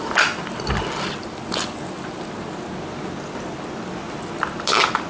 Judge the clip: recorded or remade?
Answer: recorded